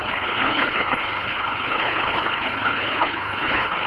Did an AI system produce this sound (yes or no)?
yes